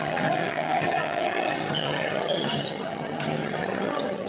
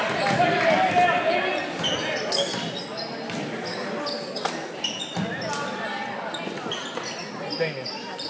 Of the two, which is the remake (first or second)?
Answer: first